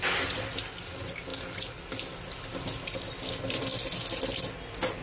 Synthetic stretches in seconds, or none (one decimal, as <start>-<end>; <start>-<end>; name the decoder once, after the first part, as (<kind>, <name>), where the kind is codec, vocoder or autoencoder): none

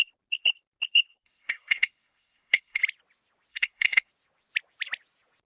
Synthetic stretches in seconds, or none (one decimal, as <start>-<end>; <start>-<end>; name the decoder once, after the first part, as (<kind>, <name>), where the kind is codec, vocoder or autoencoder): 1.1-2.8 (codec, SNAC); 3.5-4.1

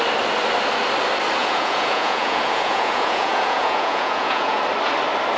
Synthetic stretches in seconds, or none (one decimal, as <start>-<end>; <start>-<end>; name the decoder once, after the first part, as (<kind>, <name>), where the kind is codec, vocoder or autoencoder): 1.4-4.6 (vocoder, Vocos)